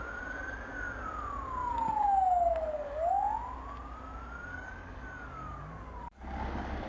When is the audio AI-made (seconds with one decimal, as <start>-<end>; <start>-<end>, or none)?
1.6-3.1; 4.5-6.9